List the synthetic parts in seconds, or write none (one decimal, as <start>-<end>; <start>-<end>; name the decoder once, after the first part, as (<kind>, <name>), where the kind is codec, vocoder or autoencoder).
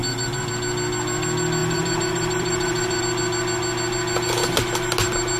0.0-0.5 (vocoder, BigVGAN v2); 1.6-3.0